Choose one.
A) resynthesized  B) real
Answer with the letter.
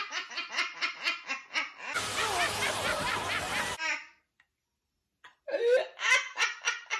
B